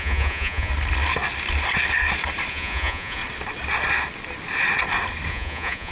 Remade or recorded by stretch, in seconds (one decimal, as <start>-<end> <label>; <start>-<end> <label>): 0.0-0.7 remade; 0.7-2.5 recorded; 2.5-3.2 remade; 3.2-5.3 recorded; 5.3-5.9 remade